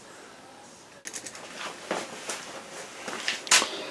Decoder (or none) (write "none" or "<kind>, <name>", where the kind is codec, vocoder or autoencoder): none